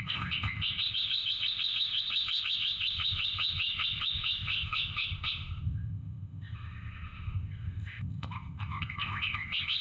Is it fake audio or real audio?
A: fake